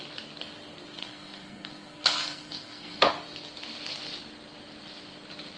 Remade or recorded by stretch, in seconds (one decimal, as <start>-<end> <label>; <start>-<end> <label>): 0.0-1.0 recorded; 1.0-3.1 remade; 3.1-5.6 recorded